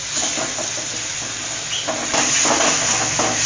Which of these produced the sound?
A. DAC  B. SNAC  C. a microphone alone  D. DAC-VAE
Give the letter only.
C